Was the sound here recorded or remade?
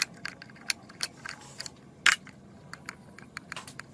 recorded